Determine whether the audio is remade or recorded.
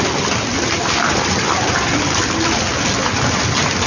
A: recorded